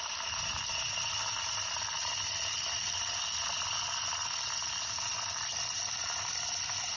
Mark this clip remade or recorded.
recorded